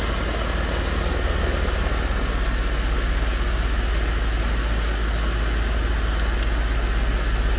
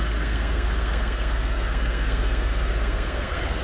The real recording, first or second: first